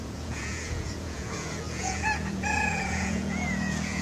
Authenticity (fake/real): fake